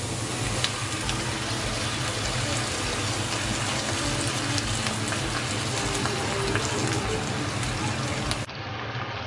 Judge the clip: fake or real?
real